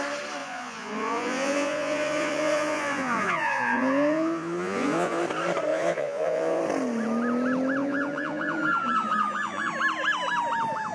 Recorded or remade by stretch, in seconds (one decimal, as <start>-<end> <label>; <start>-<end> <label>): 0.0-0.4 recorded; 0.4-5.2 remade; 5.2-5.7 recorded; 5.7-6.6 remade; 6.6-7.8 recorded; 7.8-9.7 remade; 9.7-10.9 recorded